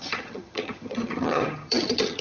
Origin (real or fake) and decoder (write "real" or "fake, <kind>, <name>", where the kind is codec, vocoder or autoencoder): fake, vocoder, HiFi-GAN